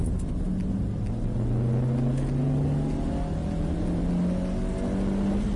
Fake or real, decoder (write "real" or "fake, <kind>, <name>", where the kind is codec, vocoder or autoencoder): real